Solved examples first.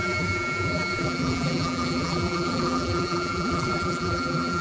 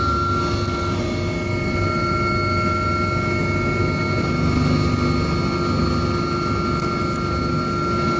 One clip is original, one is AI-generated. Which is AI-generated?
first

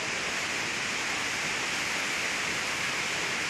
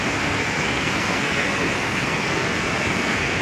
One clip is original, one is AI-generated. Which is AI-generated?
second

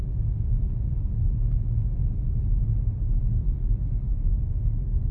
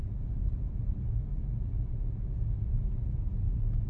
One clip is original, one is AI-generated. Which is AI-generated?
second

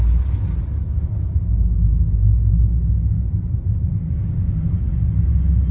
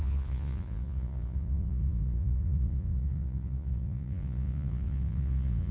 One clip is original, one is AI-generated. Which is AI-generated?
second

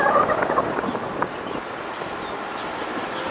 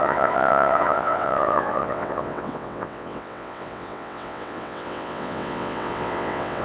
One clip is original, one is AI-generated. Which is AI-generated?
second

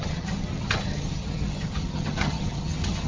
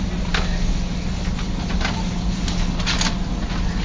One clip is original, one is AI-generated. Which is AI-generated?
first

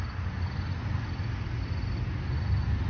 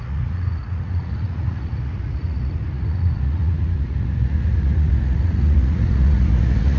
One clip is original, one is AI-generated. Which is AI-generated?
second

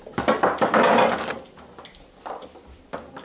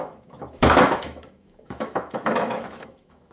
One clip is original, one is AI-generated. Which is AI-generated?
second